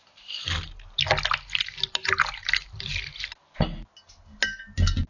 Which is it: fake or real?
real